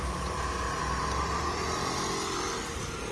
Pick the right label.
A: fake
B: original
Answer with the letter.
B